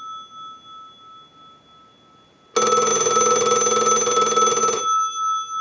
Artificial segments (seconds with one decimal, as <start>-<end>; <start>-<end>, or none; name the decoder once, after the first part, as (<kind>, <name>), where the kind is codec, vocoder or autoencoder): none